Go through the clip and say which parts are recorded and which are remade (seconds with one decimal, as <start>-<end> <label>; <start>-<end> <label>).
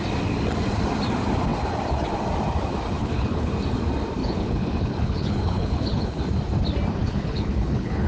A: 0.0-3.0 recorded; 3.0-3.5 remade; 3.5-4.2 recorded; 4.2-6.2 remade; 6.2-7.0 recorded; 7.0-8.1 remade